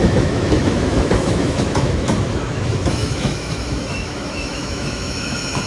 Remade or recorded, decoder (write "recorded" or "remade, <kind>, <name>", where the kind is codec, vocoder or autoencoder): remade, autoencoder, DAC-VAE